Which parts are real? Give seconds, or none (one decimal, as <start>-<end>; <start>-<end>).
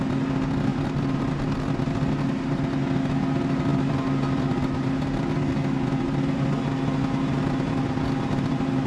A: 0.0-8.9